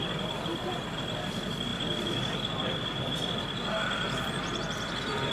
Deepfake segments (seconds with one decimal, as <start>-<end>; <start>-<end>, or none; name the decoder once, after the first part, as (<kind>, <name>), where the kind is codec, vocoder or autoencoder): none